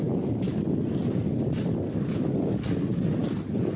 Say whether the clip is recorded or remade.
recorded